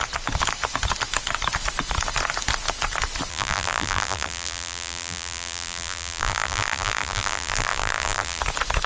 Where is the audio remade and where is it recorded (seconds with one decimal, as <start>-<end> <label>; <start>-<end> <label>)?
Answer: 0.0-3.3 recorded; 3.3-8.4 remade; 8.4-8.9 recorded